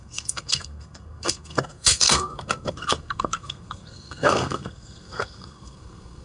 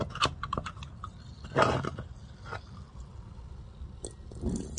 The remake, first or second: first